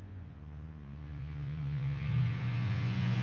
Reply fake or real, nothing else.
fake